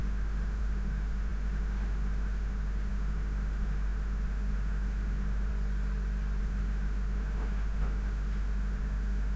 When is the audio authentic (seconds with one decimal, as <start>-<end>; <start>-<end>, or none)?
5.5-6.4